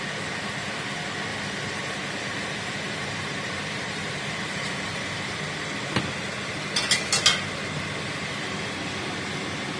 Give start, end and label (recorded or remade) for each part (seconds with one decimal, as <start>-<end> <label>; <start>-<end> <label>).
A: 0.0-1.3 recorded; 1.3-5.4 remade; 5.4-9.8 recorded